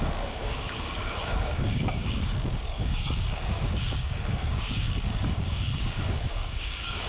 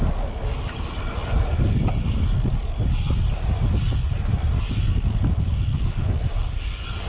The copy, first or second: first